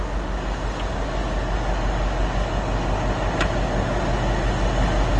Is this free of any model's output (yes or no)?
yes